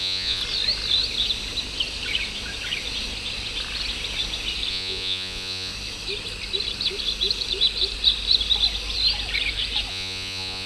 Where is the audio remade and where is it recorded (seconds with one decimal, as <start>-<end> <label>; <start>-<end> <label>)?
0.0-0.4 remade; 0.4-4.7 recorded; 4.7-5.7 remade; 5.7-9.9 recorded; 9.9-10.7 remade